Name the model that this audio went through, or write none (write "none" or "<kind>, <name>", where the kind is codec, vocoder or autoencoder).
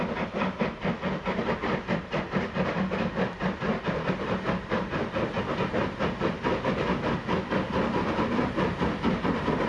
none